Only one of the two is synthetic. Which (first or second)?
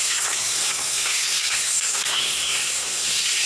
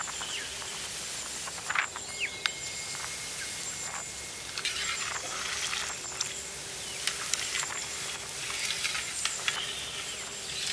first